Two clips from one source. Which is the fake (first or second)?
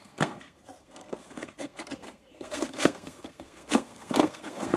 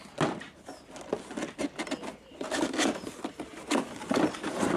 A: first